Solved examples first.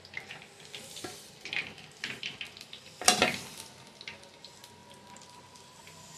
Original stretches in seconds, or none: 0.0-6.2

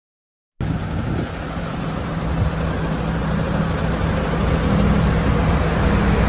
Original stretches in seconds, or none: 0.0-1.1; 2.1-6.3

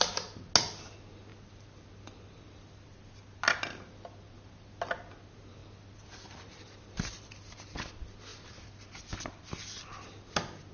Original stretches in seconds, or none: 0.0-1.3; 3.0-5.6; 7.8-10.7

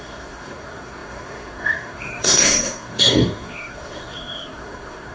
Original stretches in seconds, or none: none

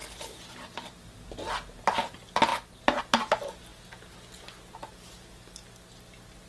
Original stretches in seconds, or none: 0.0-6.5

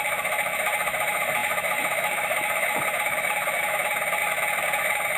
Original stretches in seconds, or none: 4.2-4.8